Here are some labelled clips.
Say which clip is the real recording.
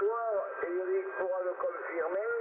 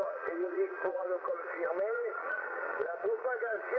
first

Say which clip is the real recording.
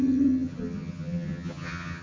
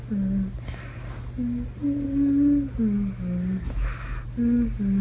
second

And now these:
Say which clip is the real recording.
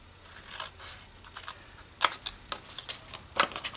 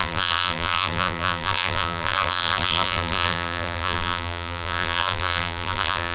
first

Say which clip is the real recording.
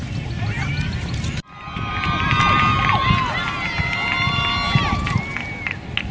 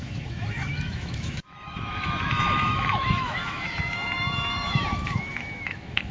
first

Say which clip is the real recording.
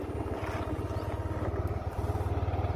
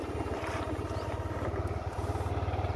first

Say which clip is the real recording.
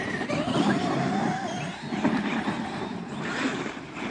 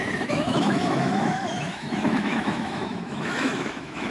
first